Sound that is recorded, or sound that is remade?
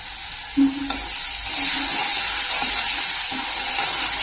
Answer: recorded